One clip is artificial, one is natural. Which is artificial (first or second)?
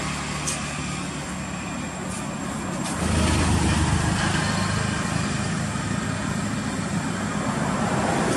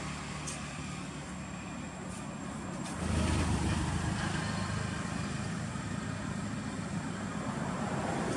second